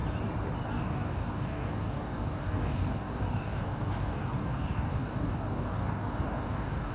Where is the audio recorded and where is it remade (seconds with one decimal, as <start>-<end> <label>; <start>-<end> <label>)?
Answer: 0.0-0.7 recorded; 0.7-6.9 remade